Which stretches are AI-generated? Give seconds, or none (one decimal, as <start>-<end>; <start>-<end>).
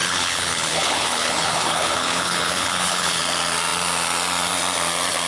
0.0-3.2